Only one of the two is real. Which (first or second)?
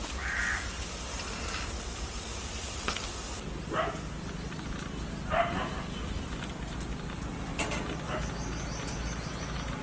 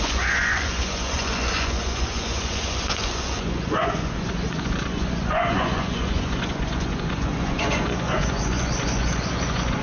first